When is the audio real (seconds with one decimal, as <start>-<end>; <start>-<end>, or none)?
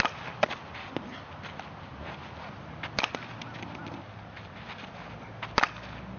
0.0-6.2